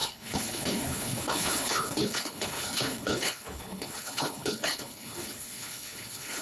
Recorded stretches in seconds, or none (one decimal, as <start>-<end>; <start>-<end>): none